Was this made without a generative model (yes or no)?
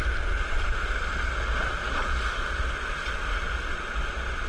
yes